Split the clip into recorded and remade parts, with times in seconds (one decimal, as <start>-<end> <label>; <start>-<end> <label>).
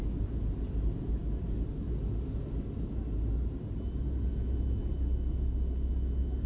0.0-6.5 recorded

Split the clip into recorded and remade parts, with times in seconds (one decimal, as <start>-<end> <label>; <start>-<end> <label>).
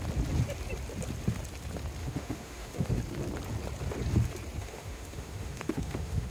0.0-2.0 recorded; 2.0-3.0 remade; 3.0-4.6 recorded; 4.6-6.3 remade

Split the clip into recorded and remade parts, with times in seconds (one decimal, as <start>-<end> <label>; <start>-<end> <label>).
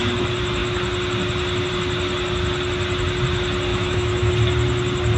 0.0-3.7 recorded; 3.7-4.3 remade; 4.3-5.2 recorded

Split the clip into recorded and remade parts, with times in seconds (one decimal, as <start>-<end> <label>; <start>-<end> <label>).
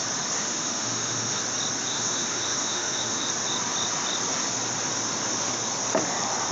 0.0-0.4 recorded; 0.4-1.4 remade; 1.4-1.9 recorded; 1.9-3.3 remade; 3.3-6.5 recorded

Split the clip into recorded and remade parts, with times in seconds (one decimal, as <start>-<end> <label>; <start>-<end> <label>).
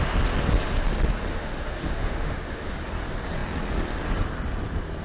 0.0-1.3 recorded; 1.3-2.7 remade; 2.7-5.0 recorded